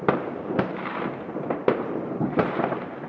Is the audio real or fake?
fake